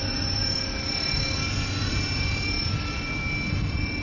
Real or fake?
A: real